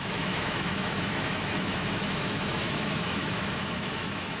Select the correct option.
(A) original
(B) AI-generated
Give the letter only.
B